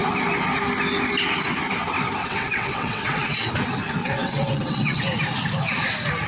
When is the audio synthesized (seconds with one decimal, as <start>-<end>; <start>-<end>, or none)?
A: 2.2-3.5; 4.0-5.0